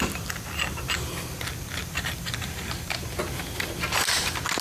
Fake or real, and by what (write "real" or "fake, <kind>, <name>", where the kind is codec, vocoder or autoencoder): real